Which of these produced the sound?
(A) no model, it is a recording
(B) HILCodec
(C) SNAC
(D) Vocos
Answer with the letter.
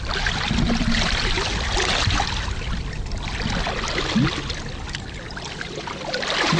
A